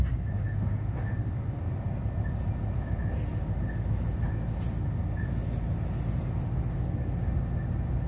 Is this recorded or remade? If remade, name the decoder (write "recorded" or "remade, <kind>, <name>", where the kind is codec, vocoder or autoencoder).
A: recorded